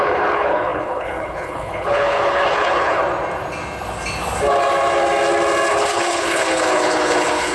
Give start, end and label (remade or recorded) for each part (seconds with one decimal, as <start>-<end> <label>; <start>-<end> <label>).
0.0-3.0 remade; 3.0-5.7 recorded; 5.7-7.5 remade